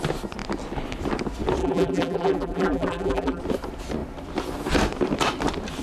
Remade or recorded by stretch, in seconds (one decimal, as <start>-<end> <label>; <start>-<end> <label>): 0.0-1.6 recorded; 1.6-3.4 remade; 3.4-5.8 recorded